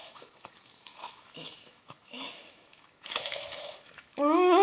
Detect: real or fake fake